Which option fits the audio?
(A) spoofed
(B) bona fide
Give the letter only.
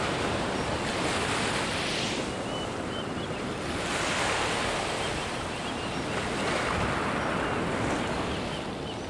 B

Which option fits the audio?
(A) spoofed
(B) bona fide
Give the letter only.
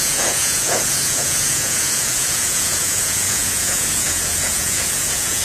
A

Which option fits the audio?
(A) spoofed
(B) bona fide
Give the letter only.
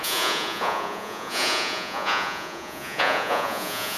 A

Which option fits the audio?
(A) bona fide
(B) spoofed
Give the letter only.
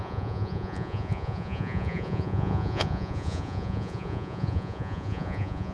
B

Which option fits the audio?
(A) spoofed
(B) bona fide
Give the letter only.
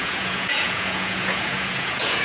A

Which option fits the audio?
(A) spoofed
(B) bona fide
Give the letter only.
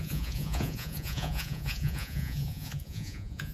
A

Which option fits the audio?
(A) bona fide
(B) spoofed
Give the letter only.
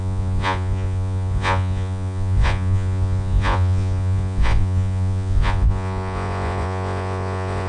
B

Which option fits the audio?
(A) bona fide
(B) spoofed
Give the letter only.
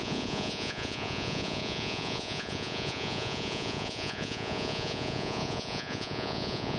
B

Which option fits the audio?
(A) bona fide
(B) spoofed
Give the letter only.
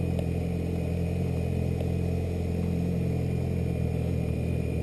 A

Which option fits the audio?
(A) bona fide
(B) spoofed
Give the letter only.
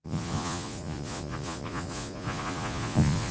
B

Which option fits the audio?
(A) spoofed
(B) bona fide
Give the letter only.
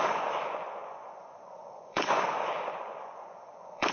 A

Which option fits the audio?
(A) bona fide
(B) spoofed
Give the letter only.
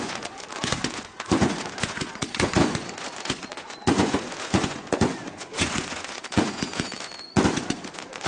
B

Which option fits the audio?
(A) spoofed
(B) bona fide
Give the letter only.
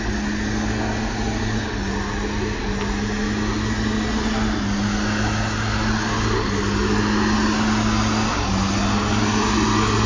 B